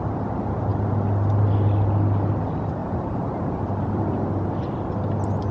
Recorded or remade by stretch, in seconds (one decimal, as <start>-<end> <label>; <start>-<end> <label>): 0.0-2.8 recorded; 2.8-4.5 remade; 4.5-5.5 recorded